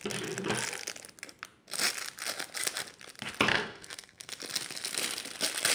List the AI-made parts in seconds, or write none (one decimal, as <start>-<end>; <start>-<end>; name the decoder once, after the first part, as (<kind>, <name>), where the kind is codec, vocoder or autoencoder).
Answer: 3.5-4.3 (codec, SNAC)